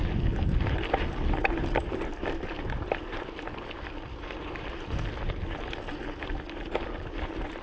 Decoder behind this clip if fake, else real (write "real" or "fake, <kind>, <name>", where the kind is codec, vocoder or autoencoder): real